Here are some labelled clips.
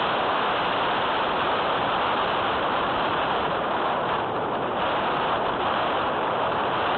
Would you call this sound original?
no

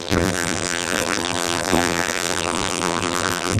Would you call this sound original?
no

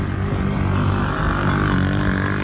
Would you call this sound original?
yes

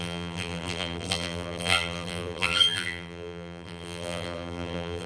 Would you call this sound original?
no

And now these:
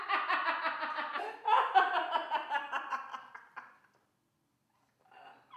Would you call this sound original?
yes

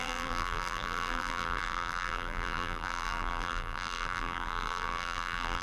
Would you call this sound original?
no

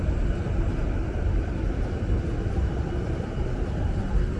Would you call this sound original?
yes